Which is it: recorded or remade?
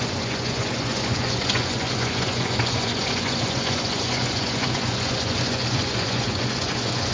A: remade